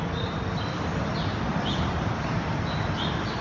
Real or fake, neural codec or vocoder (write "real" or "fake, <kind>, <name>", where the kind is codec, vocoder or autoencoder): fake, vocoder, BigVGAN v2